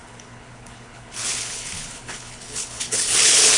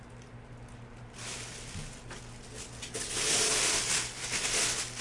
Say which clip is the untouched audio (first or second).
second